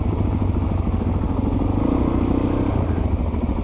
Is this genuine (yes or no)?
yes